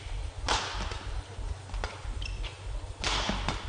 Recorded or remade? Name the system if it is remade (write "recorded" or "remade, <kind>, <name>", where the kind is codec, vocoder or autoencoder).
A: recorded